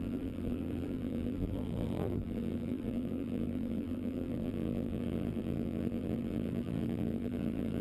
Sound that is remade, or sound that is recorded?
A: remade